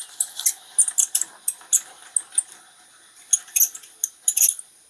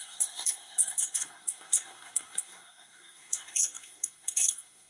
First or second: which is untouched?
first